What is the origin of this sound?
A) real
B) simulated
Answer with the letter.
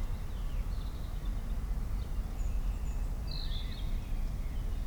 A